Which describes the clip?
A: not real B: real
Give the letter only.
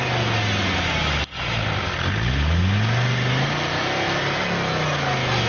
B